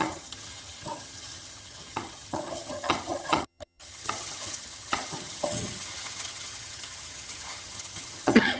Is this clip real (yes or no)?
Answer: no